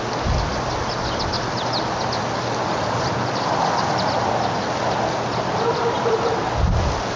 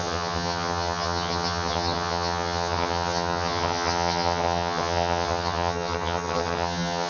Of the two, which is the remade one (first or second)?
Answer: second